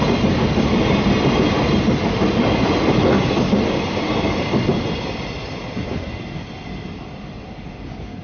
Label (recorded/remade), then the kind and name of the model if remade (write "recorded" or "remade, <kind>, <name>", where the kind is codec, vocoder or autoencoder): recorded